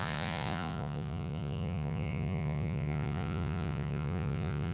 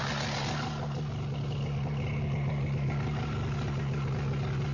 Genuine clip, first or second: second